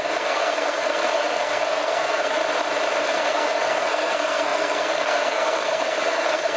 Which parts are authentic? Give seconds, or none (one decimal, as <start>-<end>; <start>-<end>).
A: 2.4-3.0